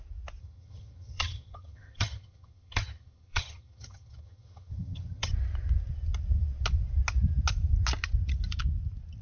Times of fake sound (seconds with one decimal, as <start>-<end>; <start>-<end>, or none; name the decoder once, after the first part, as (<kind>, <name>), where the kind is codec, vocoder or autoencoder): 0.4-5.3 (vocoder, HiFi-GAN)